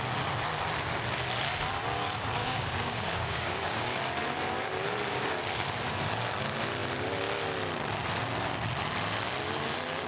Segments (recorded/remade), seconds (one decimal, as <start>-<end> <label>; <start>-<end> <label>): 0.0-2.4 recorded; 2.4-4.0 remade; 4.0-10.1 recorded